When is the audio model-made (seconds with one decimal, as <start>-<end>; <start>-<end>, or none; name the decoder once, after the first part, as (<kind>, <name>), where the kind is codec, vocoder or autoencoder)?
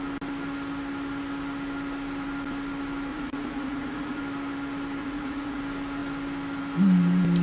3.1-4.2 (vocoder, Vocos); 5.0-5.6